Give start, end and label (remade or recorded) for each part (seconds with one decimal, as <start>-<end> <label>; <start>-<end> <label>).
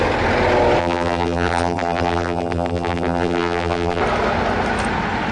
0.0-0.8 recorded; 0.8-4.0 remade; 4.0-5.3 recorded